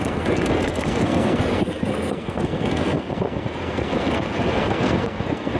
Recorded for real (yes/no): no